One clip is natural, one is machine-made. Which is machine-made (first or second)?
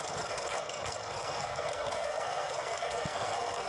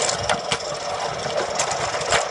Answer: first